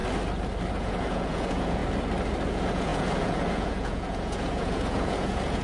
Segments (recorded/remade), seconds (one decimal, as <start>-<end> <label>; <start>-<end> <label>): 0.0-0.7 recorded; 0.7-1.8 remade; 1.8-2.5 recorded; 2.5-5.6 remade